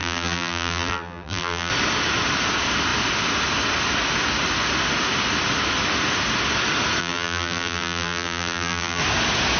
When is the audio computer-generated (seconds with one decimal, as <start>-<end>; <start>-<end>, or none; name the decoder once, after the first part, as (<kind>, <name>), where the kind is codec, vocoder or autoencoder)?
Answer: 0.0-1.7 (vocoder, BigVGAN v2); 7.0-9.0